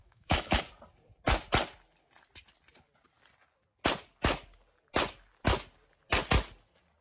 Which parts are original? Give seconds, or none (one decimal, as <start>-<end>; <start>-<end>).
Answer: 0.6-7.0